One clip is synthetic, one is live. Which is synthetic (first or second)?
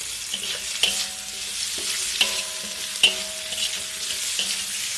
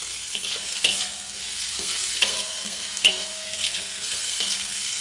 second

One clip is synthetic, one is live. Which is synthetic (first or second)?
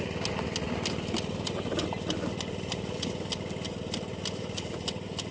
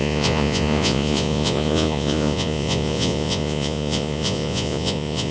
second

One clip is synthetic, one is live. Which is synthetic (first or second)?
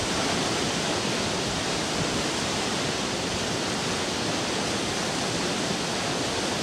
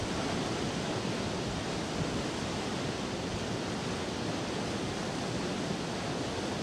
first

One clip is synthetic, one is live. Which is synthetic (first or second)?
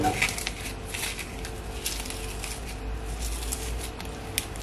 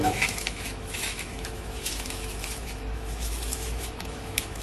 second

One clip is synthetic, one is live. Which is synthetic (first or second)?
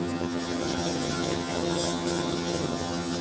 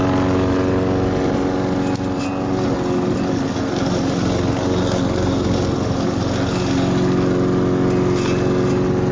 first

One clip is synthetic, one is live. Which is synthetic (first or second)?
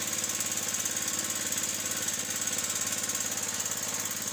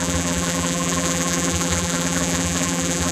second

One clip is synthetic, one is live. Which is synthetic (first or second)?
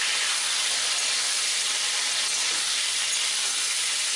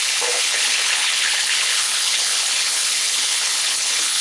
second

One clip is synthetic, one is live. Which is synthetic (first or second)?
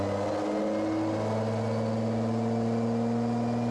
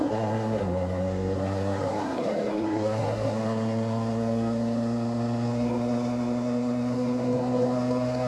second